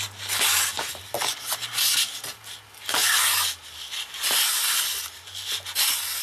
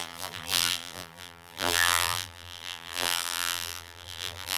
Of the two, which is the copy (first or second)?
second